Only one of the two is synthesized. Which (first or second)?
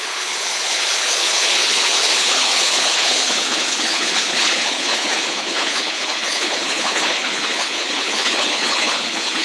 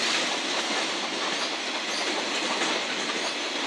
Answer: first